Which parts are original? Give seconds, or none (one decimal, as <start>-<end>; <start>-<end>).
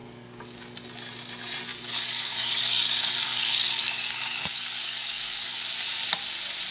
0.6-1.7; 5.7-6.7